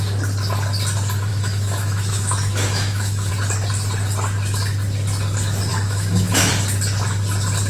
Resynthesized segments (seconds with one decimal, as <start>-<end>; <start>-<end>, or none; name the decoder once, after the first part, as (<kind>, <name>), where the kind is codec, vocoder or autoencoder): 1.3-3.3 (autoencoder, DAC-VAE); 5.7-6.5